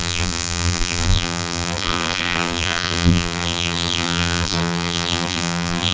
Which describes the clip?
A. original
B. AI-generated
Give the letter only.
B